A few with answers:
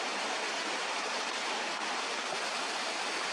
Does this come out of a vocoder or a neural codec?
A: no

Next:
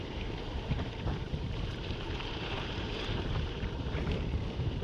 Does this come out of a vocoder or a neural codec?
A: yes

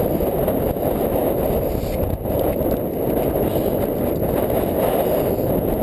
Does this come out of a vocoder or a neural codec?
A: no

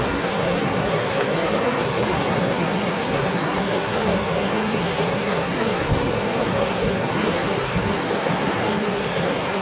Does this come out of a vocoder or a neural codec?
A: yes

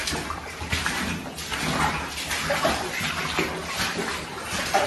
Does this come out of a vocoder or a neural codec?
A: no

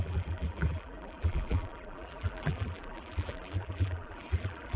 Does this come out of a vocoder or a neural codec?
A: yes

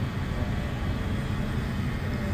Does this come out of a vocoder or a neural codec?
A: no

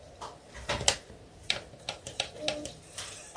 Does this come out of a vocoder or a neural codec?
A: no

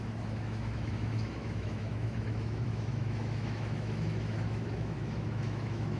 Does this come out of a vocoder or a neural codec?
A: yes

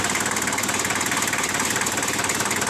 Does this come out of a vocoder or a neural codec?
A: no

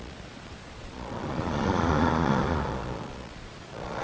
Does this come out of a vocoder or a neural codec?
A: yes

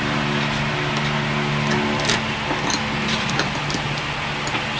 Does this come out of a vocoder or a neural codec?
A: no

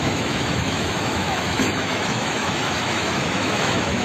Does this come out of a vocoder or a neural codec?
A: yes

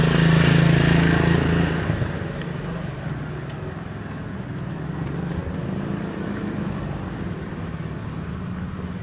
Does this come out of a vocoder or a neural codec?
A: no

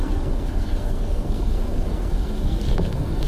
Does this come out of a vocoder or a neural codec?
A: yes